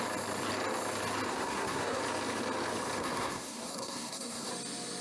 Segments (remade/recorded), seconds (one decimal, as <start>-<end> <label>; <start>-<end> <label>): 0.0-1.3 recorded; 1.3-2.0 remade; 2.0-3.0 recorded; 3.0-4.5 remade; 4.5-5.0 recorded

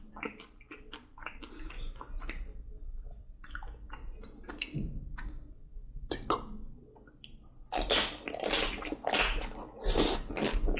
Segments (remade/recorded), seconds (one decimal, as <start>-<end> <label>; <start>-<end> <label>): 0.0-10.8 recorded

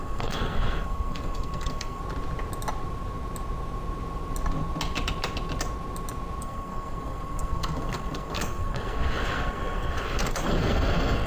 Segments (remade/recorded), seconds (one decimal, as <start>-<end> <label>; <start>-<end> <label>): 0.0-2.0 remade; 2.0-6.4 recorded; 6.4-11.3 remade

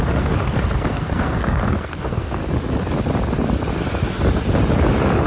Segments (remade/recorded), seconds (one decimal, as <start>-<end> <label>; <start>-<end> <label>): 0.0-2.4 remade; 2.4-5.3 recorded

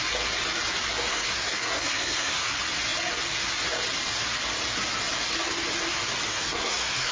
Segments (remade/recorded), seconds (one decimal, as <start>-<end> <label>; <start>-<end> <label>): 0.0-1.1 recorded; 1.1-2.5 remade; 2.5-6.3 recorded; 6.3-7.1 remade

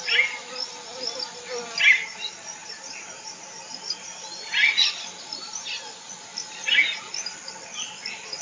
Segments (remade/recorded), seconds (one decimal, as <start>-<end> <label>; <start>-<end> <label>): 0.0-8.4 recorded

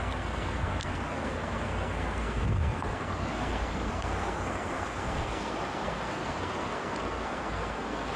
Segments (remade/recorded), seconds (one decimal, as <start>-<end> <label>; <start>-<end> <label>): 0.0-8.2 remade

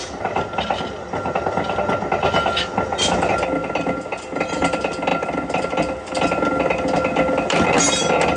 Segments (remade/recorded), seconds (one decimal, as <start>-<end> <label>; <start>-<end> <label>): 0.0-8.4 recorded